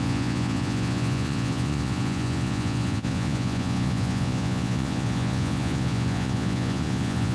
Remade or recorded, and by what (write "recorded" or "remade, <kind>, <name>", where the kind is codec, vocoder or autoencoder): remade, vocoder, Vocos